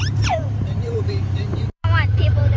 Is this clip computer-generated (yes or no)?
yes